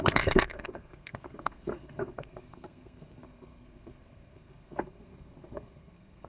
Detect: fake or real fake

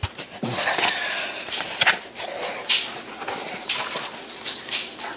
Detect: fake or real real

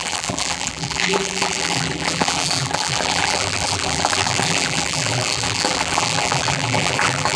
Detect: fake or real fake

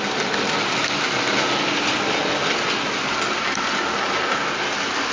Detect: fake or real real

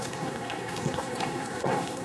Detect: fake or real fake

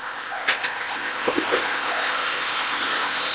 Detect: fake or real fake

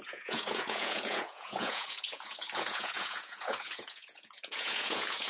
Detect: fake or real fake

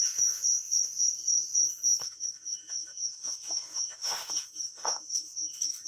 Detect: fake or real fake